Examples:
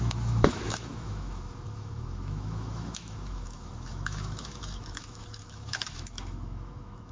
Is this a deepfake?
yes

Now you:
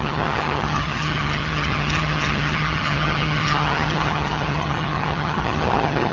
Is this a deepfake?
yes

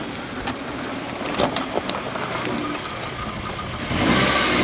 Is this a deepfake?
no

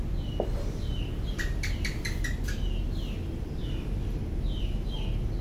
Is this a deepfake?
yes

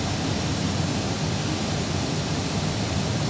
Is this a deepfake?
no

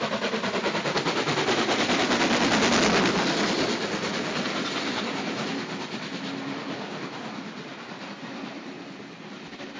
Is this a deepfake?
no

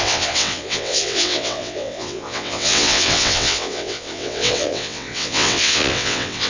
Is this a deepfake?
yes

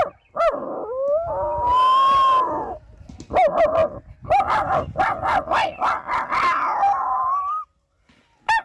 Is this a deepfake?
no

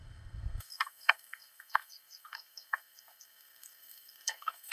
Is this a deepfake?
yes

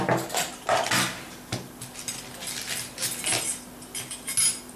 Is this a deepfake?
no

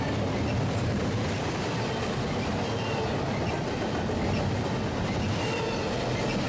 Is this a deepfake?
no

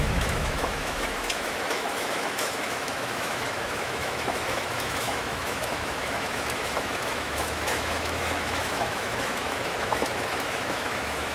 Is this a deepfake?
yes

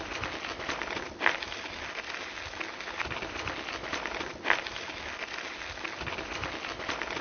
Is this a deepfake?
no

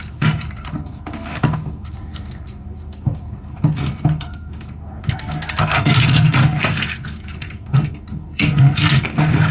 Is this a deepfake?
yes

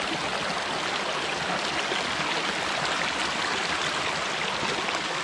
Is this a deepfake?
no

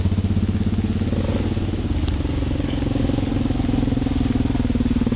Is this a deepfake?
no